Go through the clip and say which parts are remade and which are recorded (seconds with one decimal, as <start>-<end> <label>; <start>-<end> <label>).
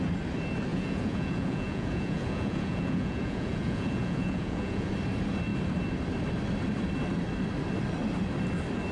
0.0-0.7 recorded; 0.7-4.9 remade; 4.9-8.9 recorded